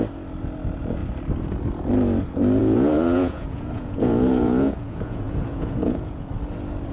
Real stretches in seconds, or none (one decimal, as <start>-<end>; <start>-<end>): 0.0-2.6; 6.3-6.9